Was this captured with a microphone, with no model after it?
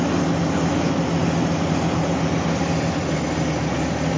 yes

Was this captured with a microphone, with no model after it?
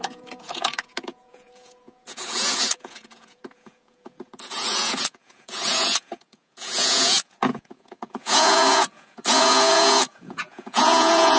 no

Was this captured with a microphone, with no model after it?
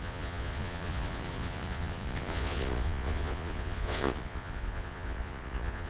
no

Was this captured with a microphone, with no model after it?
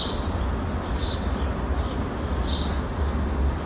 yes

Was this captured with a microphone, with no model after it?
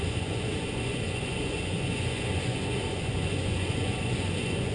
no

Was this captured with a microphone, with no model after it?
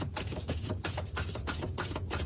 no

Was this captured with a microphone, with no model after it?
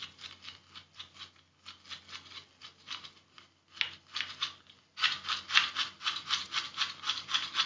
yes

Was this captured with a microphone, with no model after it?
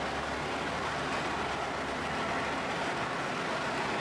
yes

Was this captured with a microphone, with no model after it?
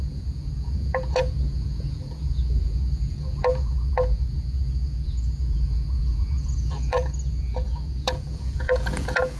no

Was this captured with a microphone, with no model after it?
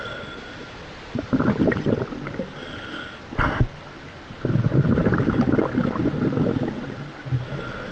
yes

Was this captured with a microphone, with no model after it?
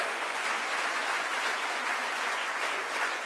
no